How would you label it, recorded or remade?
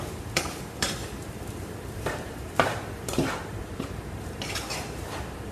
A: remade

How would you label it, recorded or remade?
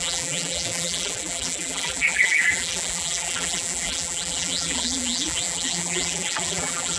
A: remade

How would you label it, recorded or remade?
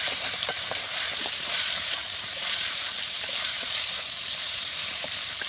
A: remade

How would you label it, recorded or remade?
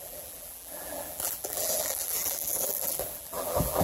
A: remade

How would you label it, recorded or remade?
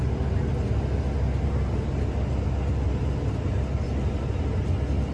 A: recorded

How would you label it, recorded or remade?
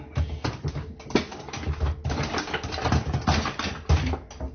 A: recorded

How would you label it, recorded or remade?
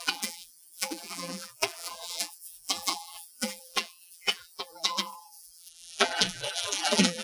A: remade